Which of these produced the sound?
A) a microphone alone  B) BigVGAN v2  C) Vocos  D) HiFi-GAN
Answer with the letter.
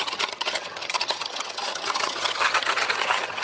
D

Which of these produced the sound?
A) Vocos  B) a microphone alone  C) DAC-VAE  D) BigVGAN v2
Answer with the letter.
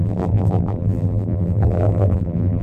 D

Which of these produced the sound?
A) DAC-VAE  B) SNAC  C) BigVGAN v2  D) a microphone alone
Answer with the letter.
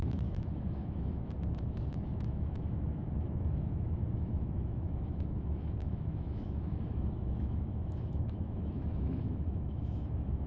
A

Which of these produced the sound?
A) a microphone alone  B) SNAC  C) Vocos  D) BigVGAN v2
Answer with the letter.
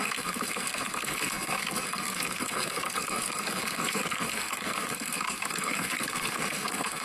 B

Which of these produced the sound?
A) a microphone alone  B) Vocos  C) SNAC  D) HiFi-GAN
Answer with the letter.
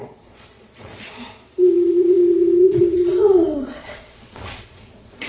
B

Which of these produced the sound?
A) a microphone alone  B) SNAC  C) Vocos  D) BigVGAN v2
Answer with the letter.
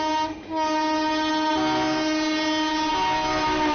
A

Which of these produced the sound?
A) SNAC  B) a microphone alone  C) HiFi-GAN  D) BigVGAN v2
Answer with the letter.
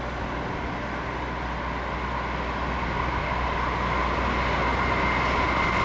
B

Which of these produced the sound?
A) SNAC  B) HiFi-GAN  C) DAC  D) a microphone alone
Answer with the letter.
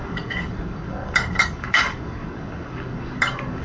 C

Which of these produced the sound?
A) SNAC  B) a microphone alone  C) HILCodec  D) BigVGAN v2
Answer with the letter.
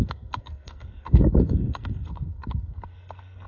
A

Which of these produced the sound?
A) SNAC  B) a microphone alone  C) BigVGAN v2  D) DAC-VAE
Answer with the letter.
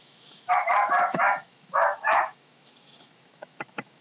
D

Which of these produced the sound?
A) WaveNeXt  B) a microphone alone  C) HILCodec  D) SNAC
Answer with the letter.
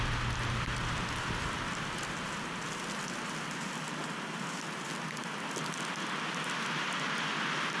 B